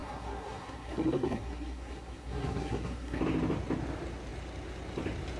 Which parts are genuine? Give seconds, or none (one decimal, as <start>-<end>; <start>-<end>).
3.2-5.4